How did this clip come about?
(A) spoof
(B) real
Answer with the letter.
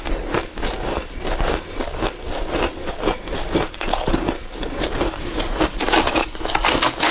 B